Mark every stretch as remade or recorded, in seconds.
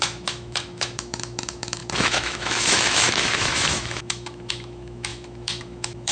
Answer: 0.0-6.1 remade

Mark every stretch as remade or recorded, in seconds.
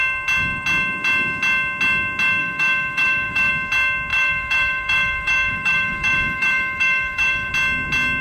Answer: 0.0-2.4 recorded; 2.4-3.5 remade; 3.5-4.1 recorded; 4.1-7.5 remade; 7.5-8.2 recorded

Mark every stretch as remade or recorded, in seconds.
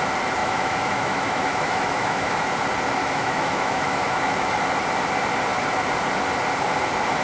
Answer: 0.0-0.4 recorded; 0.4-2.4 remade; 2.4-3.0 recorded; 3.0-4.5 remade; 4.5-7.2 recorded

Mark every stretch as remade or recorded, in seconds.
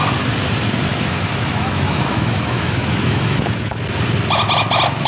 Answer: 0.0-0.9 recorded; 0.9-3.8 remade; 3.8-5.1 recorded